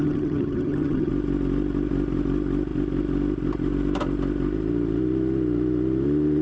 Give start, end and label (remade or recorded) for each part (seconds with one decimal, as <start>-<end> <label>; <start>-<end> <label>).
0.0-1.1 remade; 1.1-6.4 recorded

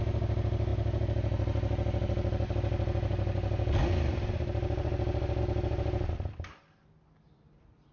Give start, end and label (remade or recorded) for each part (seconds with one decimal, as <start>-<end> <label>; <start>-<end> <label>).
0.0-7.9 recorded

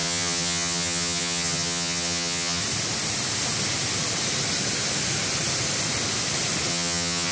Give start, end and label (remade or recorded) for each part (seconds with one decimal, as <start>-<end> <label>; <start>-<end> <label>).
0.0-2.6 remade; 2.6-6.7 recorded; 6.7-7.3 remade